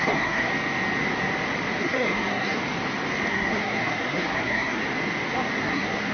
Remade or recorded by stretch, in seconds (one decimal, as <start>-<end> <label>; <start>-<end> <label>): 0.0-0.5 remade; 0.5-1.8 recorded; 1.8-2.6 remade; 2.6-3.3 recorded; 3.3-4.8 remade; 4.8-5.6 recorded; 5.6-6.1 remade